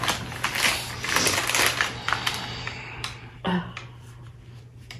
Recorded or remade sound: recorded